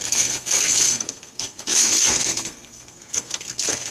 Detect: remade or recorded remade